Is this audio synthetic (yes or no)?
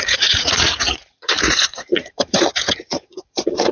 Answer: yes